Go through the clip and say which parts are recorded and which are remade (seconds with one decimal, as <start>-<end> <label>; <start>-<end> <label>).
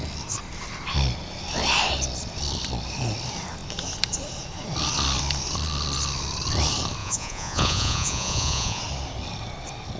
0.0-7.0 recorded; 7.0-8.8 remade; 8.8-10.0 recorded